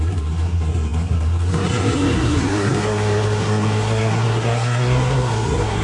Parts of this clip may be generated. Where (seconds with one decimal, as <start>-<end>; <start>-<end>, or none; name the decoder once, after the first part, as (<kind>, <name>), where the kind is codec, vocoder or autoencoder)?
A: 0.0-5.8 (codec, SNAC)